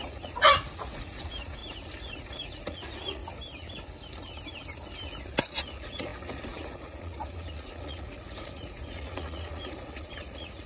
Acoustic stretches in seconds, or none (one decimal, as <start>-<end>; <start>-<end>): 1.6-2.2; 3.2-5.4